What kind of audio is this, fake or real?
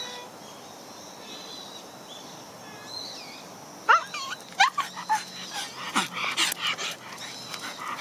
real